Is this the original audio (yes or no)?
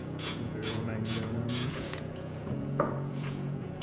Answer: no